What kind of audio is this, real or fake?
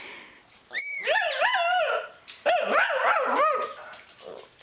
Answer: fake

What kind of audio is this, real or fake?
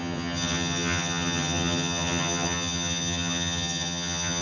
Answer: fake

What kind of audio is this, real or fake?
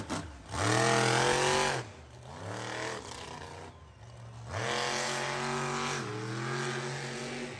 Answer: real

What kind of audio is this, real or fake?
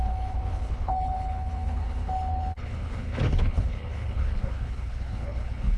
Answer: fake